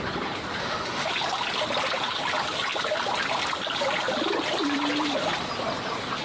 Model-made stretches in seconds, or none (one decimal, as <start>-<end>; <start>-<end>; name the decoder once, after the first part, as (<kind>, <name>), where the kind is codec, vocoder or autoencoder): 0.6-1.1 (autoencoder, DAC-VAE)